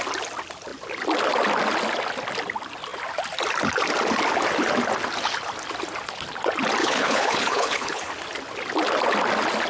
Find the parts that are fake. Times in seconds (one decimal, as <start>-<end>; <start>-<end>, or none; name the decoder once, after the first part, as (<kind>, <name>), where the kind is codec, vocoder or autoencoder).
6.8-8.1 (codec, HILCodec)